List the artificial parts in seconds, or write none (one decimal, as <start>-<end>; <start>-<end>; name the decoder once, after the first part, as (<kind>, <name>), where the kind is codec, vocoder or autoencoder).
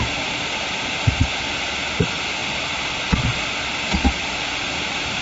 none